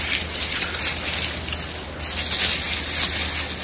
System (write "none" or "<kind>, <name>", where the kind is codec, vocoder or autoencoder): none